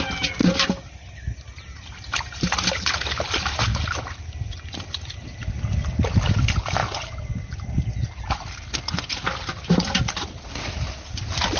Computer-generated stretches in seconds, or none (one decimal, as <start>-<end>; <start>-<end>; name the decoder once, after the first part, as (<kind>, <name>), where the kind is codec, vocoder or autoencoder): none